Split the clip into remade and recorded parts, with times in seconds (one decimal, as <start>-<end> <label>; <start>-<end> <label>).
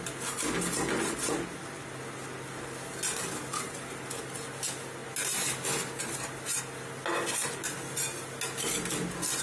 0.0-9.4 recorded